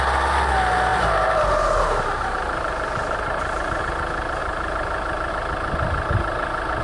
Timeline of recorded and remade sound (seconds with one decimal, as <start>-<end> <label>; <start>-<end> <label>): 0.0-0.9 recorded; 0.9-3.8 remade; 3.8-4.4 recorded; 4.4-5.3 remade; 5.3-6.8 recorded